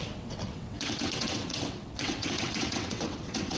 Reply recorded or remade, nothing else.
remade